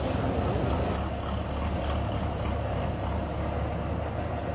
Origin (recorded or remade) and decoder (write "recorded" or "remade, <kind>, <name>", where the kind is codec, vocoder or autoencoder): recorded